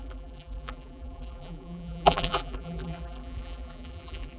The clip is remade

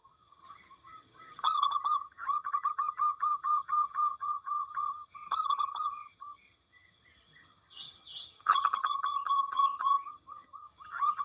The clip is remade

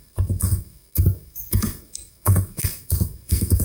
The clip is remade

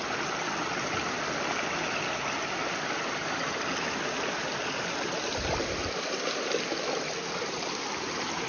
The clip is recorded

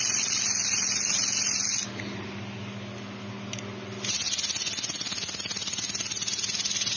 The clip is recorded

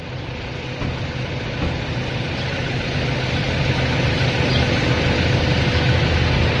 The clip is recorded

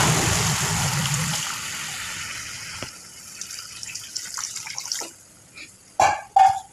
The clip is recorded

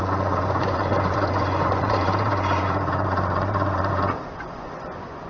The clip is remade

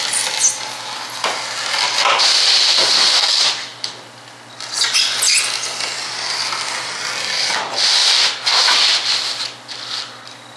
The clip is recorded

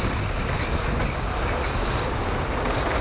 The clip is recorded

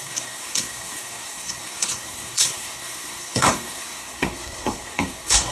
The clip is remade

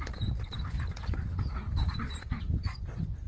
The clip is remade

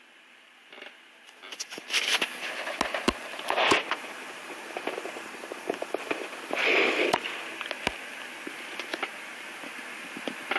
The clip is recorded